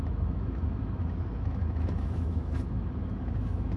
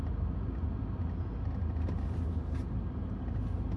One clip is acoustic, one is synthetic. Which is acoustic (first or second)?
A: second